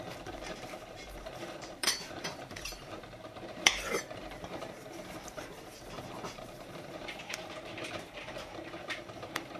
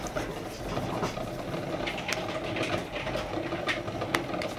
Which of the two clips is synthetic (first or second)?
first